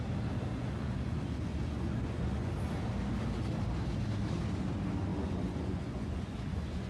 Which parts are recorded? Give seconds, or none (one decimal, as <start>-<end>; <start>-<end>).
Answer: 0.0-0.5; 2.5-5.1